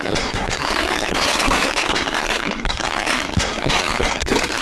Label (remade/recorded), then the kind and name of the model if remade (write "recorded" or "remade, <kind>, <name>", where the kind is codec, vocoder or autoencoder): remade, codec, SNAC